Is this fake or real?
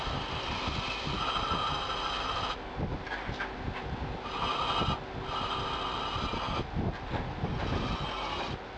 real